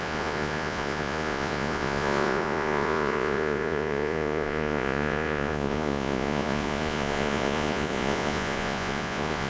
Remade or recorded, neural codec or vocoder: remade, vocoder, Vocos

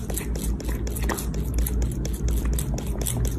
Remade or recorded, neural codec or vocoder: recorded